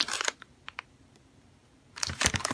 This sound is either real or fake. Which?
fake